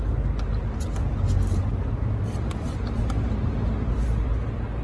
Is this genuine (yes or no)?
yes